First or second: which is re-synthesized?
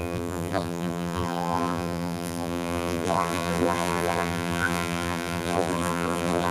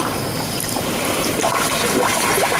first